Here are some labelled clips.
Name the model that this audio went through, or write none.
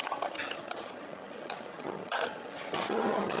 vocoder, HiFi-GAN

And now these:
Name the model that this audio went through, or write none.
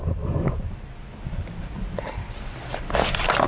vocoder, BigVGAN v2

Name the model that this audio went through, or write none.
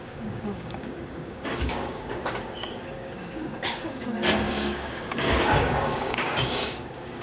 codec, DAC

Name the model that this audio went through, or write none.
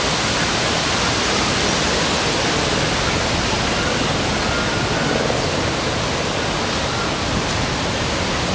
none